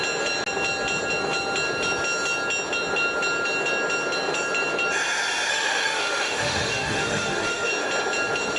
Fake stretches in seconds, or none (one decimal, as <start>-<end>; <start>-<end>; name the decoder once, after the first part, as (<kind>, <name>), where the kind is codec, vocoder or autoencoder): 5.5-7.7 (autoencoder, DAC-VAE)